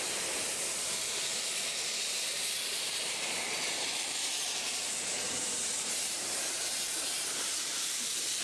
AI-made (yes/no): yes